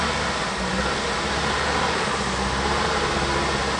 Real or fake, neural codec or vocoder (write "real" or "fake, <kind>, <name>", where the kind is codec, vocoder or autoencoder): real